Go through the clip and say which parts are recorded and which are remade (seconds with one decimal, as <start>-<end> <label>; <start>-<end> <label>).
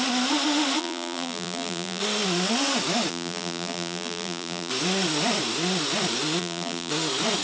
0.0-0.8 recorded; 0.8-2.0 remade; 2.0-3.1 recorded; 3.1-4.7 remade; 4.7-6.4 recorded; 6.4-6.9 remade; 6.9-7.4 recorded